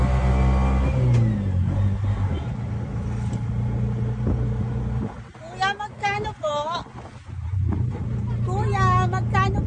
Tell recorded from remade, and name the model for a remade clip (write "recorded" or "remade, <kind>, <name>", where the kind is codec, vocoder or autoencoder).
recorded